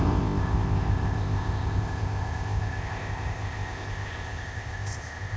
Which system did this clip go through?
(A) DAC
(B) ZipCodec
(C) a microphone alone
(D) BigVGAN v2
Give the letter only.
B